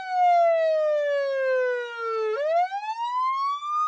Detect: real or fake real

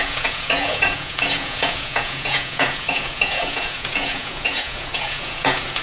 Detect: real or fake fake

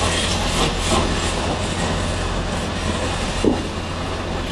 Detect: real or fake real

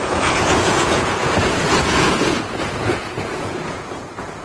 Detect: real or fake fake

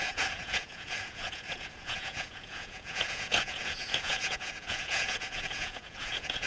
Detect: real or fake fake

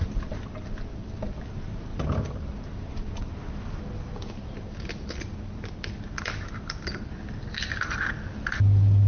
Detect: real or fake real